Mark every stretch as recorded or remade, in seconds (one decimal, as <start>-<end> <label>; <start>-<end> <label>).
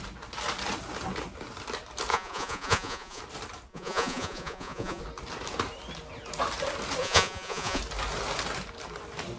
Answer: 0.0-2.1 recorded; 2.1-3.2 remade; 3.2-3.7 recorded; 3.7-5.0 remade; 5.0-7.0 recorded; 7.0-7.8 remade; 7.8-9.4 recorded